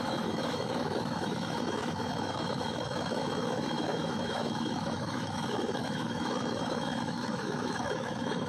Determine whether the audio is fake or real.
fake